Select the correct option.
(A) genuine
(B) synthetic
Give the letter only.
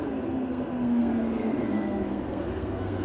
B